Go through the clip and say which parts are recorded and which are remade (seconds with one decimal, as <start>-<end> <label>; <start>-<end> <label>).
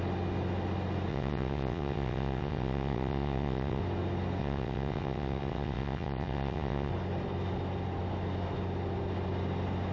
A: 0.0-1.1 recorded; 1.1-3.8 remade; 3.8-4.4 recorded; 4.4-6.9 remade; 6.9-9.9 recorded